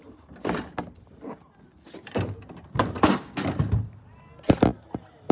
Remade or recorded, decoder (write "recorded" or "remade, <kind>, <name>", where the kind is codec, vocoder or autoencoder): recorded